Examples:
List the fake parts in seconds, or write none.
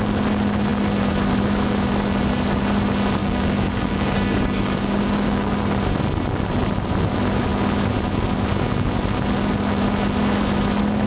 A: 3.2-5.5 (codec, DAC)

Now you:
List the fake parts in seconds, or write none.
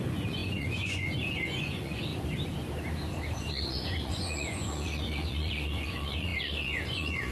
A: 0.0-2.1 (vocoder, Vocos); 3.4-7.3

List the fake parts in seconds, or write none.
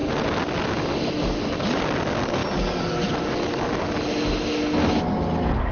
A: none